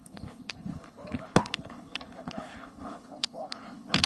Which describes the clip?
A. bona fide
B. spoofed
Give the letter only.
B